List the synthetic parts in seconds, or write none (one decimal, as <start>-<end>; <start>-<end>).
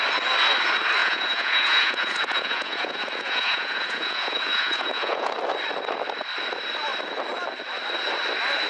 1.0-5.3